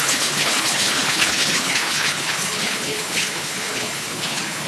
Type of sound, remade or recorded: remade